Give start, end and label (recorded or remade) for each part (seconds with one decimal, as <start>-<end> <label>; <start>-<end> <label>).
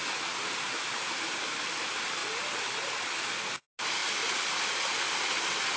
0.0-5.8 recorded